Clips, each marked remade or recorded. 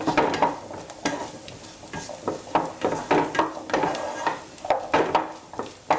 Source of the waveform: recorded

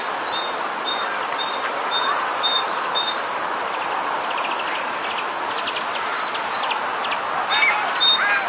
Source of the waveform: recorded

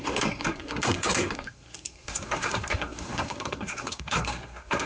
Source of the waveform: remade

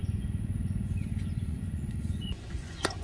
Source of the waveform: remade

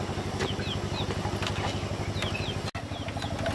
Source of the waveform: recorded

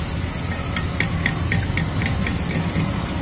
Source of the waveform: recorded